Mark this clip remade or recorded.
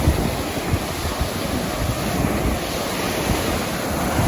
recorded